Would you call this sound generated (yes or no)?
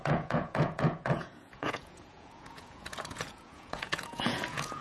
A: yes